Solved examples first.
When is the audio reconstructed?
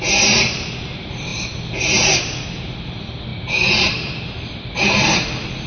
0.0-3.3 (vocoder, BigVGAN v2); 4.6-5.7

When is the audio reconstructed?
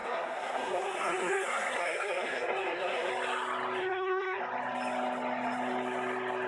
0.0-3.1 (codec, SNAC); 3.8-4.4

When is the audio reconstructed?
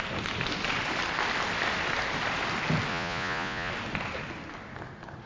2.9-3.7 (vocoder, Vocos)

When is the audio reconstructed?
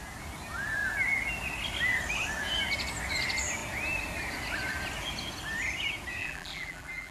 6.2-7.1 (vocoder, BigVGAN v2)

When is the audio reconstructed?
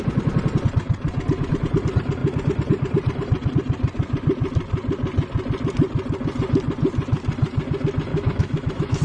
8.1-9.0 (autoencoder, DAC-VAE)